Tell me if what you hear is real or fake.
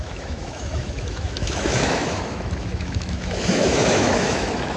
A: fake